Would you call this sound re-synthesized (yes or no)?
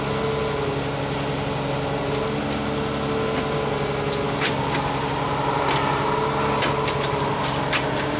no